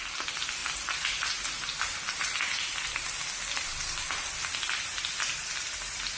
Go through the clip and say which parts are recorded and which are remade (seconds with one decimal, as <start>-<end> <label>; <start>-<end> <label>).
0.0-6.2 recorded

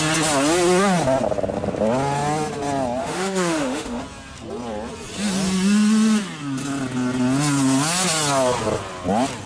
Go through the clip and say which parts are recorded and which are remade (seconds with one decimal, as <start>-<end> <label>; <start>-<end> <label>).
0.0-3.0 recorded; 3.0-4.0 remade; 4.0-9.5 recorded

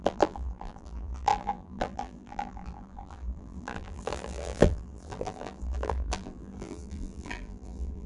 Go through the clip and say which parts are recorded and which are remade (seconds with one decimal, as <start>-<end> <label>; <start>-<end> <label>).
0.0-8.1 remade

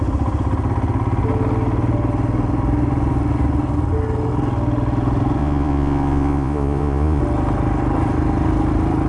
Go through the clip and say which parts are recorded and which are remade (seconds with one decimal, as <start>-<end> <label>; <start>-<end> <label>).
0.0-5.4 recorded; 5.4-7.2 remade; 7.2-9.1 recorded

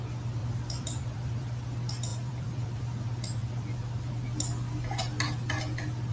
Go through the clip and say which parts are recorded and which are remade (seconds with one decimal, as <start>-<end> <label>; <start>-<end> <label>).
0.0-0.4 recorded; 0.4-1.5 remade; 1.5-2.1 recorded; 2.1-2.8 remade; 2.8-3.4 recorded; 3.4-4.1 remade; 4.1-6.1 recorded

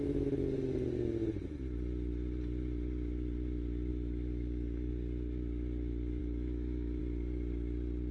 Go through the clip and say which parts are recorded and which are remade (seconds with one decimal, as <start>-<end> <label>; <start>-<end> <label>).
0.0-3.9 recorded; 3.9-4.9 remade; 4.9-6.2 recorded; 6.2-7.0 remade; 7.0-8.1 recorded

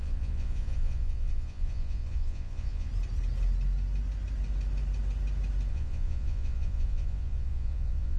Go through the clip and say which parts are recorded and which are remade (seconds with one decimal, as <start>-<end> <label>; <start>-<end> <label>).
0.0-2.9 remade; 2.9-5.7 recorded; 5.7-8.2 remade

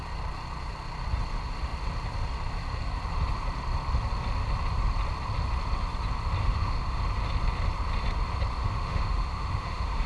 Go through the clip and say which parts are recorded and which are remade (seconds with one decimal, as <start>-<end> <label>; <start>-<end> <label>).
0.0-6.4 recorded; 6.4-7.0 remade; 7.0-8.6 recorded; 8.6-10.1 remade